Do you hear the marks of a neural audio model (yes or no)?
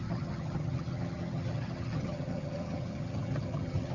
yes